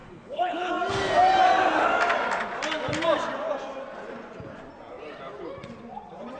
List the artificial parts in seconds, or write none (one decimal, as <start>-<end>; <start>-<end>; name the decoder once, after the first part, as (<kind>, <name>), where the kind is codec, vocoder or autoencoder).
0.0-0.7 (codec, HILCodec)